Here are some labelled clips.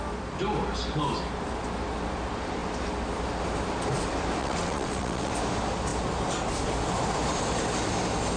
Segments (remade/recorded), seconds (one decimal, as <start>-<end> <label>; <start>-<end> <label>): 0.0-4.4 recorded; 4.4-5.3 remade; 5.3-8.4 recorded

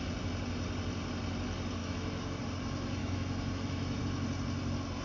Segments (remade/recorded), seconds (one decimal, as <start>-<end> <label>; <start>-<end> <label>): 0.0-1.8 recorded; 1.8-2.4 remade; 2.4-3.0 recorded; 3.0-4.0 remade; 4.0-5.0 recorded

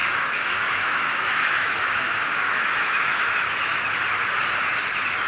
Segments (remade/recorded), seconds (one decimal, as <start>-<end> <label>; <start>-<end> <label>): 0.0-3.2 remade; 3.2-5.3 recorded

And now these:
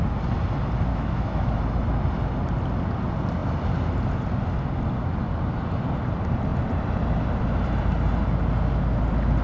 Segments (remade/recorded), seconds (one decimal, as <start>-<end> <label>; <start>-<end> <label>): 0.0-0.9 recorded; 0.9-1.6 remade; 1.6-9.4 recorded